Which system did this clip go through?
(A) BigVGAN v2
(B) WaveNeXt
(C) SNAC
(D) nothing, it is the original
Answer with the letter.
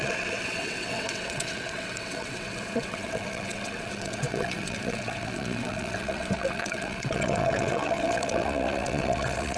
B